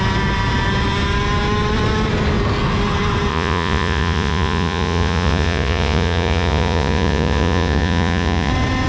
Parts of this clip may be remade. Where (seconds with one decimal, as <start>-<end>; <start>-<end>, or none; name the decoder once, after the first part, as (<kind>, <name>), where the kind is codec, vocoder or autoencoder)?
3.3-8.5 (vocoder, Vocos)